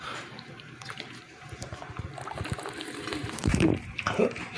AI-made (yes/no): yes